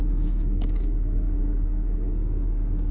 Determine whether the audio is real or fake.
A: fake